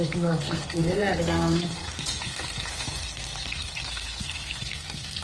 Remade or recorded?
remade